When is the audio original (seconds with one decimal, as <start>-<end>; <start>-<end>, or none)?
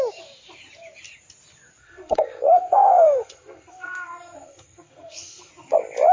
0.0-1.8; 5.5-6.1